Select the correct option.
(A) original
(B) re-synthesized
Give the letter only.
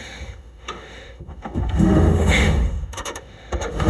B